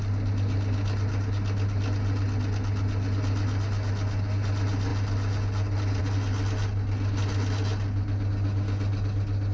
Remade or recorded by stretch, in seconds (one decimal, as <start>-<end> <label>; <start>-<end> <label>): 0.0-9.5 recorded